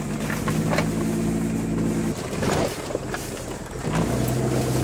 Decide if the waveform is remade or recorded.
recorded